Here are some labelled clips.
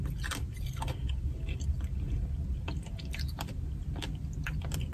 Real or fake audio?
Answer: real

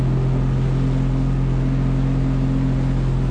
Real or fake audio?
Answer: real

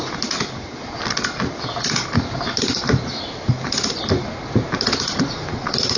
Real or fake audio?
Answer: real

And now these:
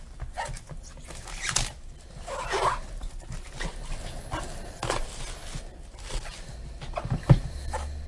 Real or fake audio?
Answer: real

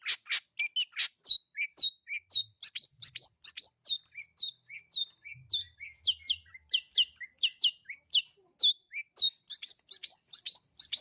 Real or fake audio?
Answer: real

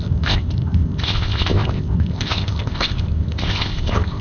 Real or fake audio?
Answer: fake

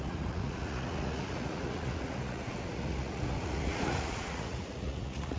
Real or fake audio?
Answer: fake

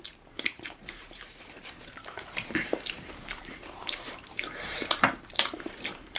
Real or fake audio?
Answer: fake